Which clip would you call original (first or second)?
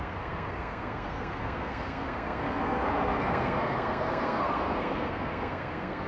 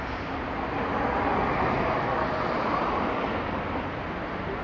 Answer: second